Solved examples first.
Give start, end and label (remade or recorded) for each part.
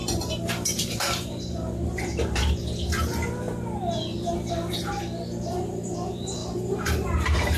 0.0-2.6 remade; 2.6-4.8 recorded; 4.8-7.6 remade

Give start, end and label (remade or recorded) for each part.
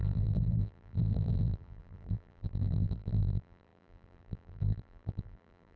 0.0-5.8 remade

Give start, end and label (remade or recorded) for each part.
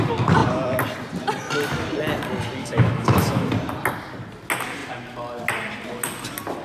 0.0-2.6 recorded; 2.6-3.5 remade; 3.5-6.6 recorded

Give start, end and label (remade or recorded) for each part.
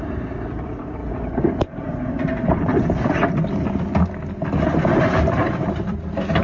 0.0-1.0 remade; 1.0-1.6 recorded; 1.6-2.7 remade; 2.7-5.0 recorded; 5.0-6.4 remade